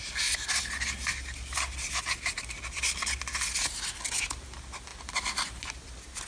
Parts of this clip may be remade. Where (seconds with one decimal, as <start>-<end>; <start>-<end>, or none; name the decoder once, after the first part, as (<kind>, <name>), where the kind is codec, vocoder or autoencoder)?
none

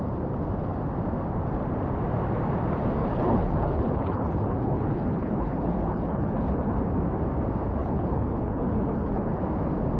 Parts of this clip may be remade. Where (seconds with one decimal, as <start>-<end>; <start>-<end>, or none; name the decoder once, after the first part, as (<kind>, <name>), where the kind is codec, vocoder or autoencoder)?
3.0-6.8 (codec, HILCodec); 7.8-9.4